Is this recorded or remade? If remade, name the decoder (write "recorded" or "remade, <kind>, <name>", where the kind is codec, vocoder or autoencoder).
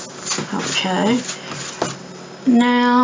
recorded